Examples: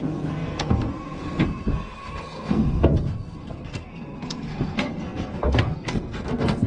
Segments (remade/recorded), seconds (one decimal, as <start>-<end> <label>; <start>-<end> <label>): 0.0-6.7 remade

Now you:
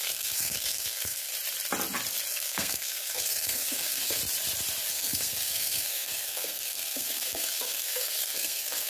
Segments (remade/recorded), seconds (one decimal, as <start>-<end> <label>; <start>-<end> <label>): 0.0-1.3 remade; 1.3-2.3 recorded; 2.3-4.2 remade; 4.2-4.9 recorded; 4.9-8.9 remade

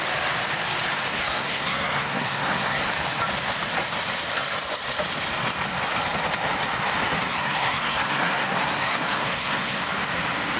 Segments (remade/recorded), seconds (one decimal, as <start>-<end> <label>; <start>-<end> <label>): 0.0-1.1 recorded; 1.1-2.9 remade; 2.9-7.3 recorded; 7.3-9.8 remade; 9.8-10.6 recorded

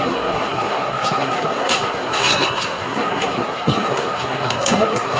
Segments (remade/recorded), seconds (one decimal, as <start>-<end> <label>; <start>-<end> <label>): 0.0-5.2 remade